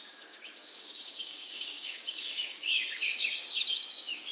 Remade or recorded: remade